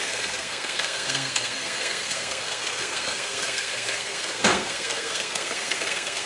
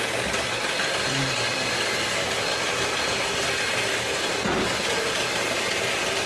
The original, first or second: second